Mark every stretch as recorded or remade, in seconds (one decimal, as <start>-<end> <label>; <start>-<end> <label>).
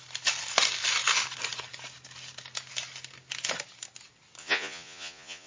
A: 0.0-4.4 recorded; 4.4-5.5 remade